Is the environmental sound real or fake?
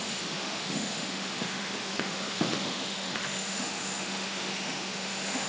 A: fake